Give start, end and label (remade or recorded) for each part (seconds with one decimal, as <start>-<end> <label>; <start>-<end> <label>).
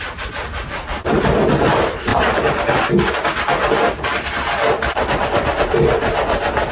0.0-6.7 recorded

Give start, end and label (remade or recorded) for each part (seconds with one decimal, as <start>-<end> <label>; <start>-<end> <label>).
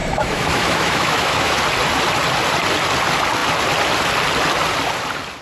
0.0-1.6 remade; 1.6-5.4 recorded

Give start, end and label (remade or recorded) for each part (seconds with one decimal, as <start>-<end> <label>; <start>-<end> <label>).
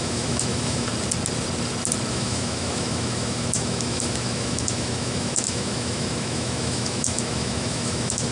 0.0-0.9 remade; 0.9-2.1 recorded; 2.1-8.3 remade